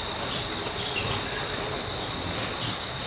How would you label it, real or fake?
real